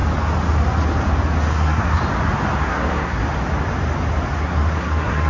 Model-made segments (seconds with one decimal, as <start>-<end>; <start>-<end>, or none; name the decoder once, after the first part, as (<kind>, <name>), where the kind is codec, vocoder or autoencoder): 1.5-2.0 (codec, SNAC); 2.6-3.2; 4.4-5.3